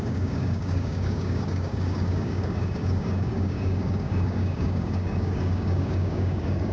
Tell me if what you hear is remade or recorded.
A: remade